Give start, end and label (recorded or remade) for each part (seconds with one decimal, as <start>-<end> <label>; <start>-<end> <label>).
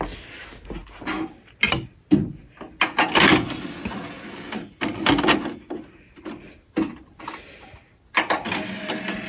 0.0-9.3 recorded